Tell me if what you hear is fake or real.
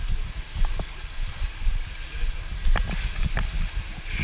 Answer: real